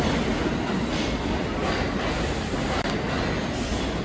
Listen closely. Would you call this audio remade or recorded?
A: recorded